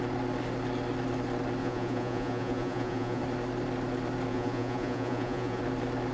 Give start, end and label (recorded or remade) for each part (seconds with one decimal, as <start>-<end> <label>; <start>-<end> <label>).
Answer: 0.0-1.6 recorded; 1.6-3.2 remade; 3.2-4.3 recorded; 4.3-5.6 remade; 5.6-6.1 recorded